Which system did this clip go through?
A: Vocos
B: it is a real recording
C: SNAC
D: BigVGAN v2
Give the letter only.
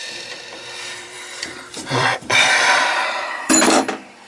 D